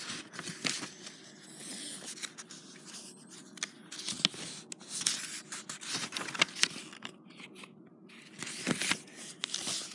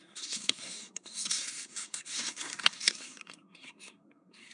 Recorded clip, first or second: first